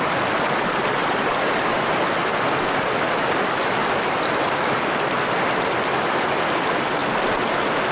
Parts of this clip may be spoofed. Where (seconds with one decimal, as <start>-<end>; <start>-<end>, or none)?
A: 1.0-2.9